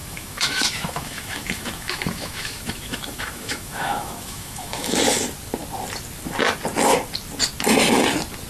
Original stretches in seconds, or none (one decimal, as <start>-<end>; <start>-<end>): 5.0-8.5